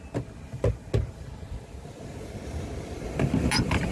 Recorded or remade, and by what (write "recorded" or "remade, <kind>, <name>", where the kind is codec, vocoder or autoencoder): recorded